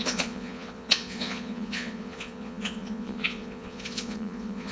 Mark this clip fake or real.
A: fake